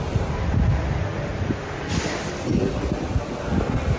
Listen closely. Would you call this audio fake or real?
real